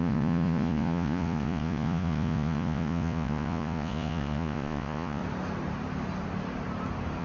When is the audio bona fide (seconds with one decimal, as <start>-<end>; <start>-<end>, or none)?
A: 5.2-7.2